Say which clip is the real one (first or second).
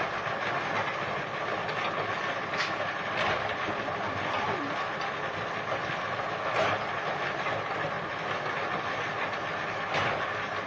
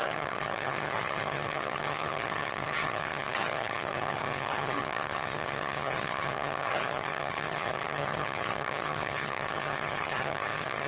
first